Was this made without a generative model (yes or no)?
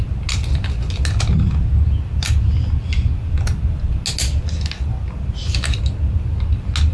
yes